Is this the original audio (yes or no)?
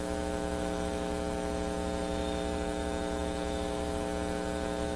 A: no